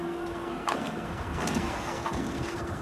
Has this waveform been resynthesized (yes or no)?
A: yes